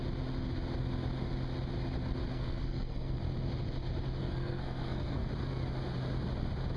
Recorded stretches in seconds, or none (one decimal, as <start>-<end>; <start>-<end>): 0.0-2.3; 3.1-4.2; 5.3-6.8